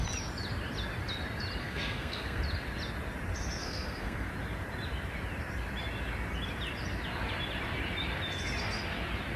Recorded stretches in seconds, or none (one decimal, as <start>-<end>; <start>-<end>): 0.0-1.6; 2.4-3.6; 4.3-9.4